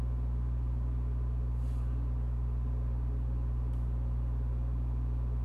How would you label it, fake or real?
real